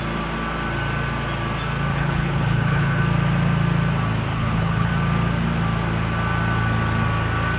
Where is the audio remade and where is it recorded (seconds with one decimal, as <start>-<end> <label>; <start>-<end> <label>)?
0.0-1.9 recorded; 1.9-3.0 remade; 3.0-4.3 recorded; 4.3-4.9 remade; 4.9-7.6 recorded